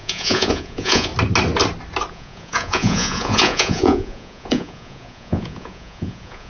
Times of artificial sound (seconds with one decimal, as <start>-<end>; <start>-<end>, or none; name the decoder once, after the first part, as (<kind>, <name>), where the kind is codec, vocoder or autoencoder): 0.0-1.1 (vocoder, Vocos); 2.1-6.5

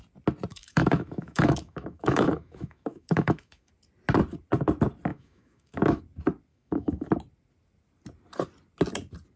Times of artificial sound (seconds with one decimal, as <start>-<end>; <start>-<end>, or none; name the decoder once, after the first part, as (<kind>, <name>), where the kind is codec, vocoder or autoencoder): 0.5-3.7 (autoencoder, DAC-VAE); 5.1-6.0; 6.5-7.1

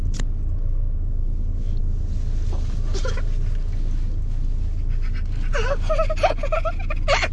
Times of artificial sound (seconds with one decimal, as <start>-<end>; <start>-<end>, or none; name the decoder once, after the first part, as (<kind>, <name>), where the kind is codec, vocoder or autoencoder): none

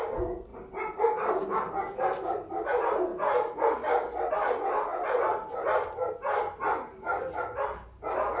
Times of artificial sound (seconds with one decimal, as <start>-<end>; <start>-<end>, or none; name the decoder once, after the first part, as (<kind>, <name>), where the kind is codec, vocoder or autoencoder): none